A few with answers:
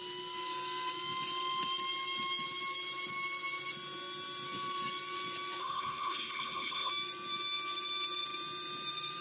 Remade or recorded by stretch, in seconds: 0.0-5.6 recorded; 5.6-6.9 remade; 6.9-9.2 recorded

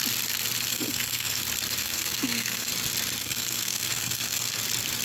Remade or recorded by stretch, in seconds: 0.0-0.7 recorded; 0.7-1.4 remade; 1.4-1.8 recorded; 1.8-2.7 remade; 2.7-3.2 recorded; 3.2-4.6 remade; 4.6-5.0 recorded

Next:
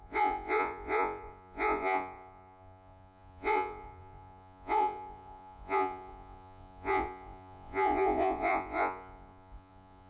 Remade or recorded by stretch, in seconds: 0.0-10.1 remade

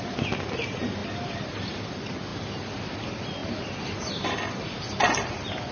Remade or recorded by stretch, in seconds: 0.0-5.7 recorded